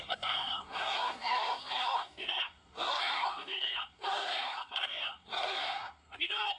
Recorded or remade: remade